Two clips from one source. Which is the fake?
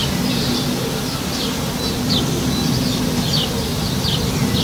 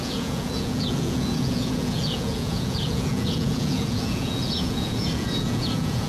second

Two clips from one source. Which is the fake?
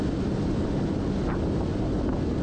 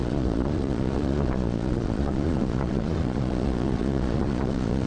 second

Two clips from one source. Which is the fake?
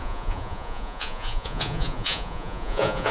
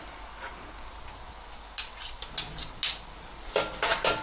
first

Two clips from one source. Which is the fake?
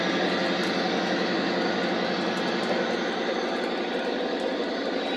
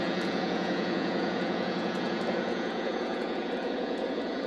second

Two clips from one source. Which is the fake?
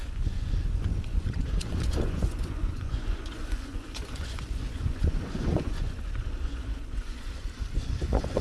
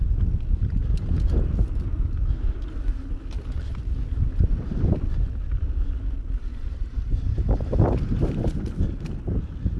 first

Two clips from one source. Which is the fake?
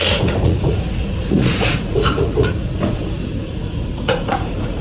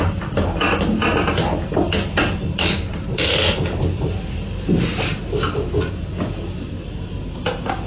first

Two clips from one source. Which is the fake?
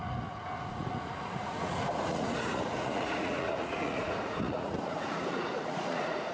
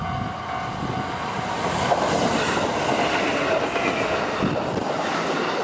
first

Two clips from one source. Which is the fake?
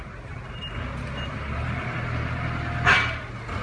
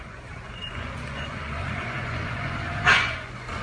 second